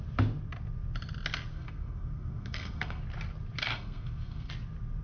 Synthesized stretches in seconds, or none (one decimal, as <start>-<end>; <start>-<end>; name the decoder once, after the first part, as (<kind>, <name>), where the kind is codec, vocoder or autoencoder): 1.5-3.0 (codec, SNAC); 3.7-4.5